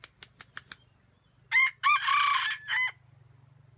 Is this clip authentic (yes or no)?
yes